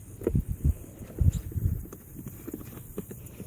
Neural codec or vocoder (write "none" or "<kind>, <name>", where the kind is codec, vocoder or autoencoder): none